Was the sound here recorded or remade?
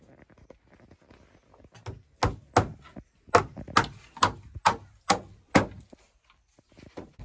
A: recorded